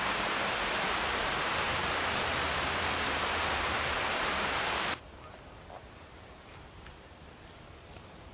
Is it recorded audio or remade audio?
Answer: remade